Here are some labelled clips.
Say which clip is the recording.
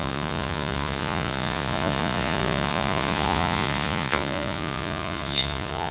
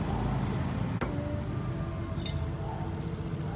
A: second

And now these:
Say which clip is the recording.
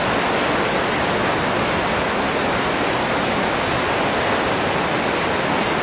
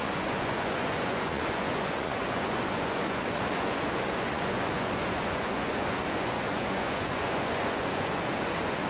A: first